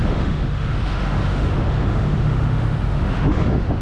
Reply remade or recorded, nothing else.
remade